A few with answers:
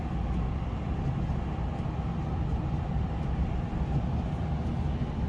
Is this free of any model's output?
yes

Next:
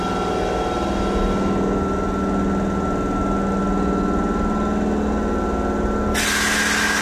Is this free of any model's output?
yes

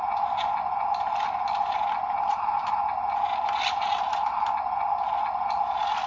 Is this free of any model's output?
yes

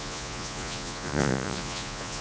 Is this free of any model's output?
no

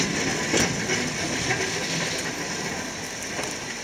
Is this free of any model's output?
yes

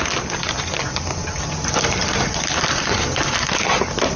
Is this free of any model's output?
yes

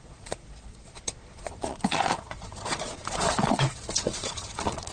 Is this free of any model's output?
no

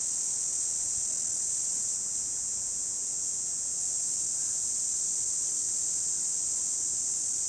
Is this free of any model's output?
yes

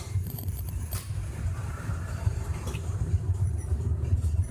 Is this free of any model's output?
no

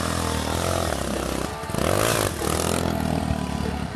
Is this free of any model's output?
yes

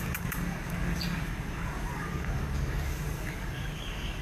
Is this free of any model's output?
no